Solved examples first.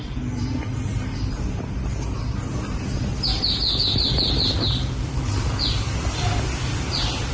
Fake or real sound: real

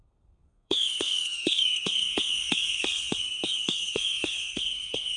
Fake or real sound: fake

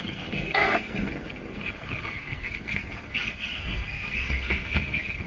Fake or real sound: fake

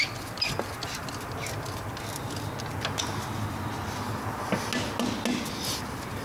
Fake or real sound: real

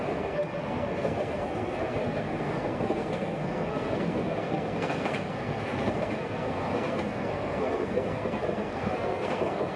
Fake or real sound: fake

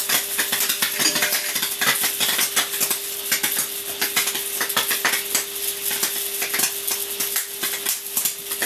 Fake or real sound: real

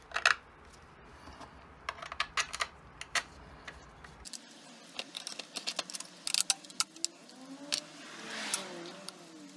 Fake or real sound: real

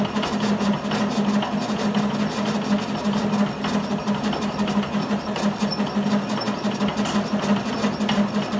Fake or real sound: real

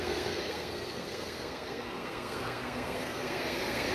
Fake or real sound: fake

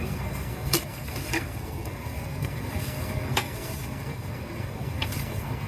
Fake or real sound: fake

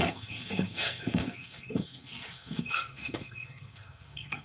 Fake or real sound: fake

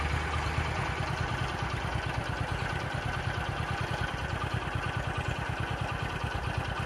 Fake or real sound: real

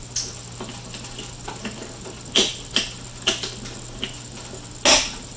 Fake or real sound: real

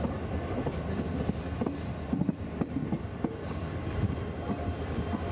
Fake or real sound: real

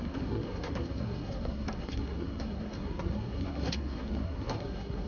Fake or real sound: fake